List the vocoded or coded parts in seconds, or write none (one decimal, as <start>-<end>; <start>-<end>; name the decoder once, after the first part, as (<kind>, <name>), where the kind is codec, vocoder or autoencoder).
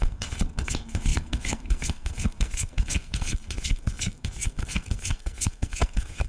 0.0-6.3 (codec, SNAC)